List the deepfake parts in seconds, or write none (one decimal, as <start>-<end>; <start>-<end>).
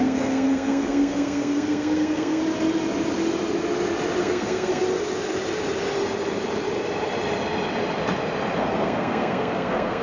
0.0-2.4; 4.2-4.8; 8.6-10.0